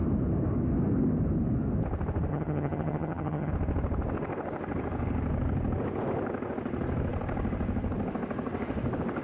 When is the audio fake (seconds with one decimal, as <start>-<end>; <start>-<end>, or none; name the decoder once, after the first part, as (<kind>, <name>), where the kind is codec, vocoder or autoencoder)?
2.3-3.5 (vocoder, HiFi-GAN)